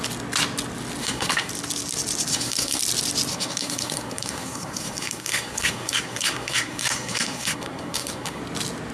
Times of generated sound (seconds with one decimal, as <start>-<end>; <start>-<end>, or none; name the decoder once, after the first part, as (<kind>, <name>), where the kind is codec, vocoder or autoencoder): 1.0-1.5 (codec, SNAC); 2.3-2.8; 3.3-8.4